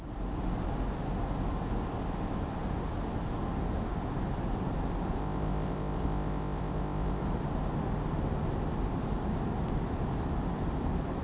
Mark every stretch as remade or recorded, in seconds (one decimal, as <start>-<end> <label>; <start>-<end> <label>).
0.0-5.2 recorded; 5.2-7.2 remade; 7.2-11.2 recorded